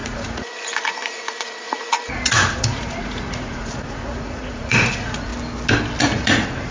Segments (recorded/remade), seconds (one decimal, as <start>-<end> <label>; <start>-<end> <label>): 0.0-5.3 remade; 5.3-6.0 recorded; 6.0-6.7 remade